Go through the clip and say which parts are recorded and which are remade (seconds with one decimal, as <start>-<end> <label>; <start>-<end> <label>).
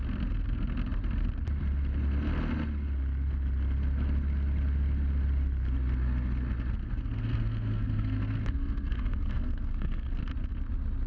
0.0-6.8 recorded; 6.8-10.2 remade; 10.2-11.1 recorded